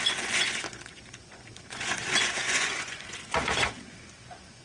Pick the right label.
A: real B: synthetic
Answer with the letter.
B